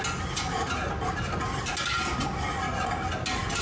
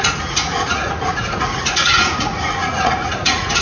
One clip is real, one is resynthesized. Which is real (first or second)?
first